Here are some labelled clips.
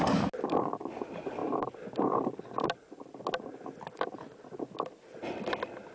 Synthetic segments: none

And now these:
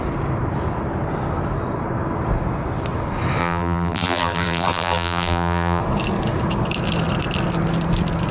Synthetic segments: 3.4-5.8 (vocoder, BigVGAN v2)